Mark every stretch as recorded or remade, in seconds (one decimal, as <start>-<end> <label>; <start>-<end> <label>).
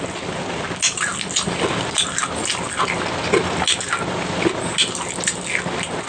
0.0-6.1 recorded